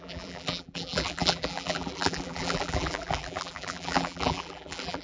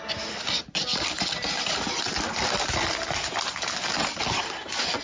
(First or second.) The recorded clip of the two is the second